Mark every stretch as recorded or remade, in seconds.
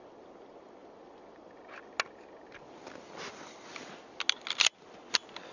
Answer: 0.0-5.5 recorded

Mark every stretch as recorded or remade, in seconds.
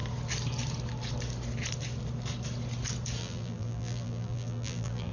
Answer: 0.0-3.2 recorded; 3.2-5.1 remade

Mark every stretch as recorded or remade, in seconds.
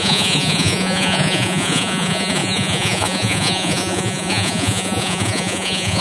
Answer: 0.0-6.0 remade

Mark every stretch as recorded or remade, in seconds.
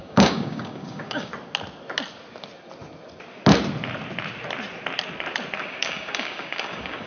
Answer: 0.0-1.3 remade; 1.3-5.6 recorded; 5.6-7.1 remade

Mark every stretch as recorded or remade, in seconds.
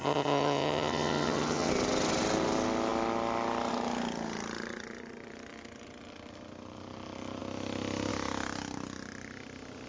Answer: 0.0-1.7 remade; 1.7-9.9 recorded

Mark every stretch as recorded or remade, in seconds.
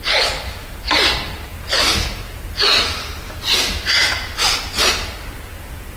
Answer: 0.0-6.0 recorded